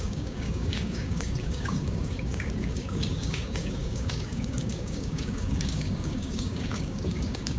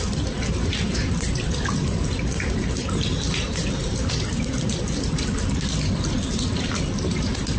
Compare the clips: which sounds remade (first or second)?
first